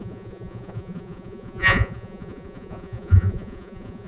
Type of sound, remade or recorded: remade